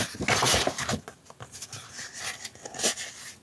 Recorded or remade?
recorded